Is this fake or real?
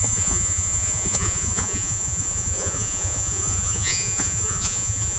fake